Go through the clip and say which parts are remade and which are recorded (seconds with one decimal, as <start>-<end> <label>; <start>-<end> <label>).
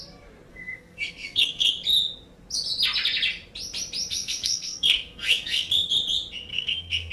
0.0-0.5 recorded; 0.5-1.7 remade; 1.7-4.1 recorded; 4.1-5.9 remade; 5.9-6.5 recorded; 6.5-7.1 remade